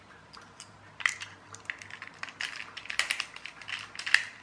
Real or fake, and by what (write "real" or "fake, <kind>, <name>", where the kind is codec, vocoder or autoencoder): real